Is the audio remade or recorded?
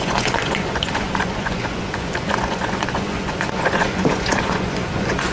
remade